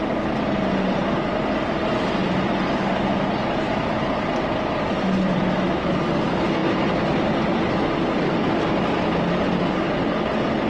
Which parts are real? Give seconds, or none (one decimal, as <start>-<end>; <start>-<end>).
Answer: 0.0-2.2; 5.4-10.7